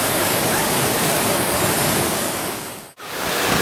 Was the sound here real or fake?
fake